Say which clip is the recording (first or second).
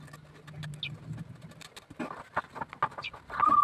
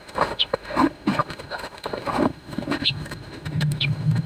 first